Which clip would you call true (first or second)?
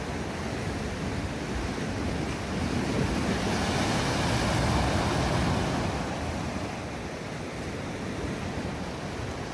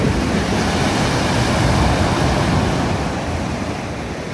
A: first